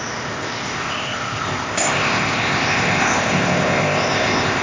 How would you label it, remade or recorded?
remade